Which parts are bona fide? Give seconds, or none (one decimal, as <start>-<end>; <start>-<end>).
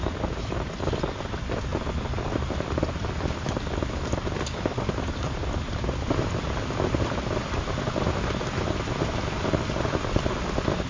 0.0-10.9